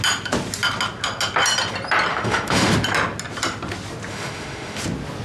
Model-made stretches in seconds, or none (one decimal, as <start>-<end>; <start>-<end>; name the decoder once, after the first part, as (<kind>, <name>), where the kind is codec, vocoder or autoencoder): 2.1-2.7 (autoencoder, DAC-VAE); 4.1-4.8